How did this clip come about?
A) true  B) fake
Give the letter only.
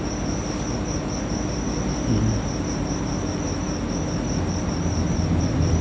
A